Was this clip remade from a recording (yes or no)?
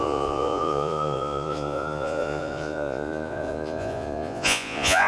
yes